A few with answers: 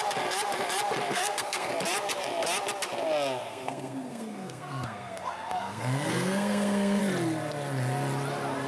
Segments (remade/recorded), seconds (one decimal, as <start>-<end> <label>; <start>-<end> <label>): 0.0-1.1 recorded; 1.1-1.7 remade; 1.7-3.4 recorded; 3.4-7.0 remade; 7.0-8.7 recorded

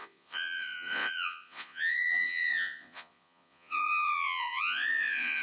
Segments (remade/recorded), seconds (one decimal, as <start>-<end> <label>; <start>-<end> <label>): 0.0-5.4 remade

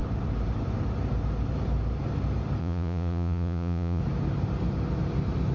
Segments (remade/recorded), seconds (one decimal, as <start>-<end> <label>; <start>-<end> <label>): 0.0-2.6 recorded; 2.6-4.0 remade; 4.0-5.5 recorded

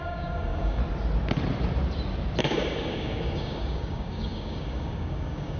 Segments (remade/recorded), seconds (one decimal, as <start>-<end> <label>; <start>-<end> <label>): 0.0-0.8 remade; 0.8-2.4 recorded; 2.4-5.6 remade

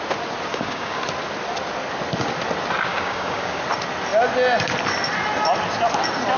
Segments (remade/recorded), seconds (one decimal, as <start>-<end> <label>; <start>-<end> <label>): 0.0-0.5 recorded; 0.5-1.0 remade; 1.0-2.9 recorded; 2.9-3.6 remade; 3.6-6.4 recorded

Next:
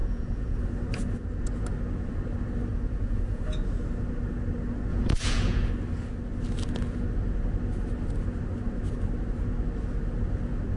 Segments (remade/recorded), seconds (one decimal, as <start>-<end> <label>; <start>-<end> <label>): 0.0-0.6 remade; 0.6-2.7 recorded; 2.7-3.4 remade; 3.4-4.9 recorded; 4.9-5.7 remade; 5.7-10.8 recorded

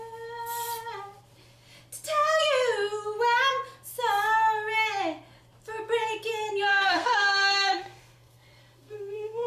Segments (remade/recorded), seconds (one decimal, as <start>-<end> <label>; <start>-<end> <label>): 0.0-6.7 recorded; 6.7-9.5 remade

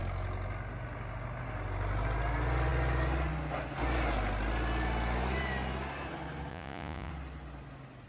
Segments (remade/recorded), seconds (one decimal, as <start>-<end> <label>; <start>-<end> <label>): 0.0-6.5 recorded; 6.5-7.1 remade; 7.1-8.1 recorded